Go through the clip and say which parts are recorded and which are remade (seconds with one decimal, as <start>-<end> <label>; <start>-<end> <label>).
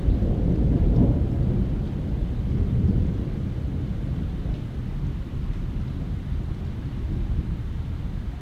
0.0-1.3 remade; 1.3-8.4 recorded